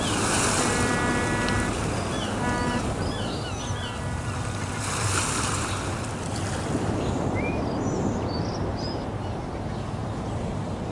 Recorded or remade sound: recorded